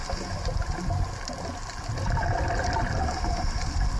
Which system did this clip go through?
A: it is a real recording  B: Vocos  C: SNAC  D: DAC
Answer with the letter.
A